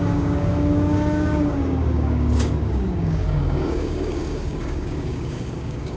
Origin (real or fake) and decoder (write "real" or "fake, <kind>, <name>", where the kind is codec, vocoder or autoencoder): fake, codec, DAC